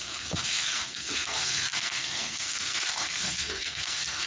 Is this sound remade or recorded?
remade